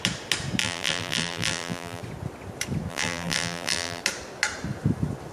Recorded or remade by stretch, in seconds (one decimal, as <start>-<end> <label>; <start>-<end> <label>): 0.0-0.6 recorded; 0.6-2.0 remade; 2.0-2.9 recorded; 2.9-4.0 remade; 4.0-5.3 recorded